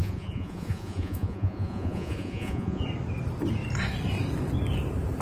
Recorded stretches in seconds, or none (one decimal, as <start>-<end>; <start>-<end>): 2.8-5.2